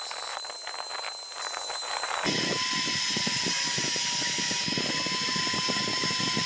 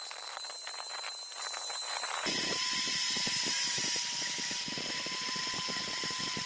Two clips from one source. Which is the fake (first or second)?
second